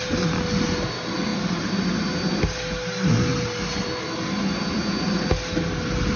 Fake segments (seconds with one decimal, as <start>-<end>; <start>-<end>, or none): none